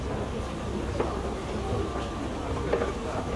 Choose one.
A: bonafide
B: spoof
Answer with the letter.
A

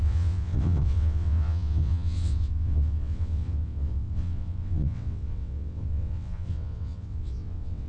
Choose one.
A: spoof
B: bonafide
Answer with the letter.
A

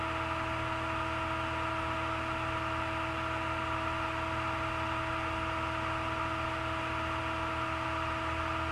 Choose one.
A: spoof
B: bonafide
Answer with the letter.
B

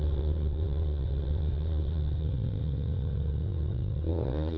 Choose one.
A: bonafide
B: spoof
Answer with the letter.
B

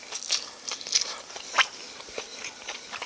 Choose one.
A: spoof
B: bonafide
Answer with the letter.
B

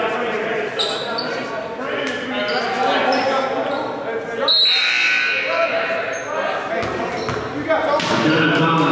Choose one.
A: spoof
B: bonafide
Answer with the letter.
B